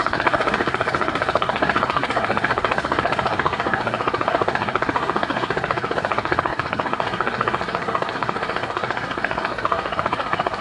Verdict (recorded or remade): remade